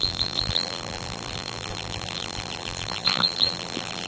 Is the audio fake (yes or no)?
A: yes